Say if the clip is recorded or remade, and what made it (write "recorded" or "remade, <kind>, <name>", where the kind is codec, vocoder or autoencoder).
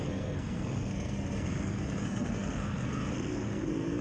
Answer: remade, codec, SNAC